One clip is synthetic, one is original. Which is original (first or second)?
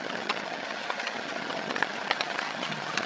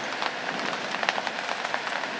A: second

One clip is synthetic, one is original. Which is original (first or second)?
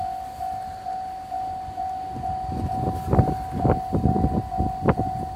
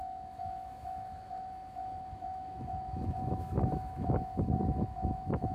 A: first